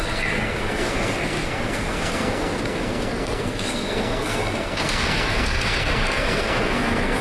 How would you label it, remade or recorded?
remade